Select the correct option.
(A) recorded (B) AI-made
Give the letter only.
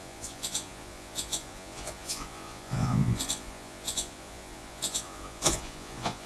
B